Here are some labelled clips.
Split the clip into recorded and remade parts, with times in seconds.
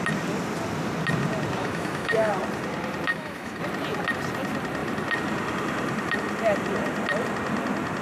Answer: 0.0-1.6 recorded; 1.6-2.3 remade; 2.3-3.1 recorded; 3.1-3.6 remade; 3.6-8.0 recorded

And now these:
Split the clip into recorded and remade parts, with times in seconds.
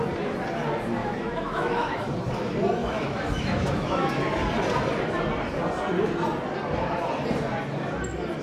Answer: 0.0-1.0 recorded; 1.0-2.0 remade; 2.0-2.8 recorded; 2.8-4.2 remade; 4.2-8.4 recorded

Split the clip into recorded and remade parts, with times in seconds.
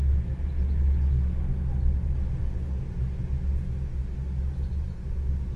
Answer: 0.0-5.6 recorded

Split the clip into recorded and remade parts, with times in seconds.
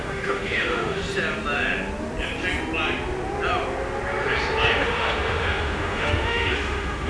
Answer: 0.0-1.0 remade; 1.0-4.8 recorded; 4.8-7.1 remade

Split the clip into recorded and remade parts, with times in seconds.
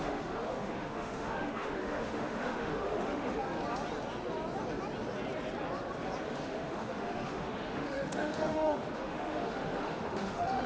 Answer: 0.0-3.4 remade; 3.4-6.3 recorded; 6.3-10.7 remade